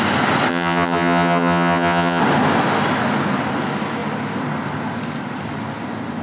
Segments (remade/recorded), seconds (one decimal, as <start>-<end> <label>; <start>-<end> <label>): 0.0-0.5 recorded; 0.5-2.2 remade; 2.2-6.2 recorded